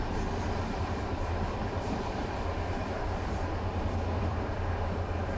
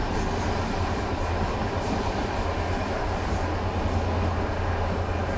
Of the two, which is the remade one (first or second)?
first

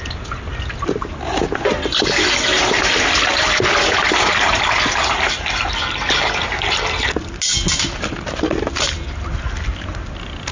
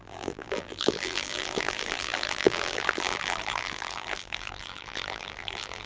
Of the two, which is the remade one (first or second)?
second